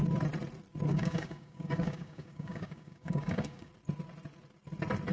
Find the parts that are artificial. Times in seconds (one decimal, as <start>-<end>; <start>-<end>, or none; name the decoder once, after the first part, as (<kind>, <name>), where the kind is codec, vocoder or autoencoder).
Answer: 0.9-3.7 (codec, DAC)